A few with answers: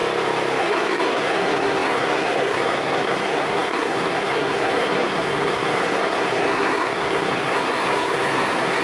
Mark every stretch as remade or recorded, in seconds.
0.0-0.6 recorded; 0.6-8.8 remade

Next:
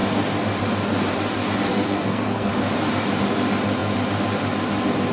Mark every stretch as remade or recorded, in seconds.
0.0-1.7 recorded; 1.7-2.5 remade; 2.5-5.1 recorded

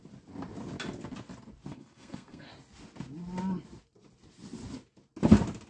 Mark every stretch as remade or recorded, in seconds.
0.0-1.7 recorded; 1.7-2.5 remade; 2.5-5.7 recorded

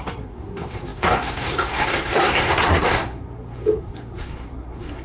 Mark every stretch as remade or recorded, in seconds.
0.0-5.0 remade

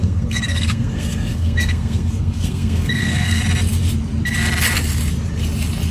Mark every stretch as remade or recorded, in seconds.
0.0-3.4 remade; 3.4-5.9 recorded

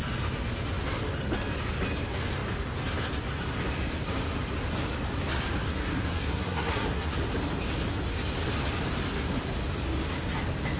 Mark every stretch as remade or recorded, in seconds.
0.0-5.7 recorded; 5.7-7.1 remade; 7.1-10.8 recorded

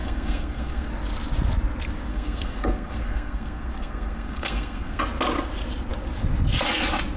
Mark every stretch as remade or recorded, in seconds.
0.0-0.9 remade; 0.9-2.1 recorded; 2.1-5.0 remade; 5.0-7.2 recorded